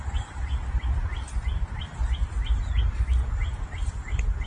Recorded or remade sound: recorded